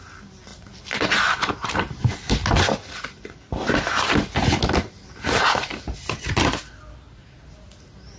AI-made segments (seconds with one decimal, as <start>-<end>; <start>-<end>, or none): none